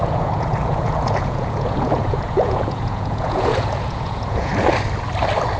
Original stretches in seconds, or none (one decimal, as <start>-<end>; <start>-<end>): 4.5-5.6